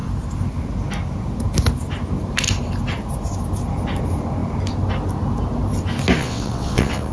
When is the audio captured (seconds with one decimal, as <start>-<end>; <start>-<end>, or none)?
0.0-6.2